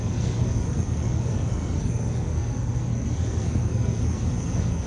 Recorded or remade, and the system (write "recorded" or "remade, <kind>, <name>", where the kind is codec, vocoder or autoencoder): remade, codec, SNAC